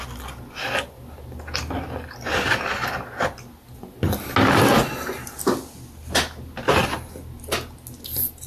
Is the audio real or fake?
real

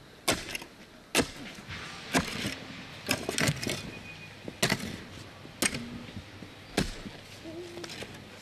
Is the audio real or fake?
real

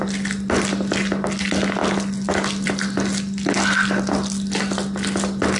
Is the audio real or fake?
real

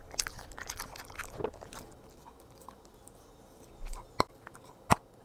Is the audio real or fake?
real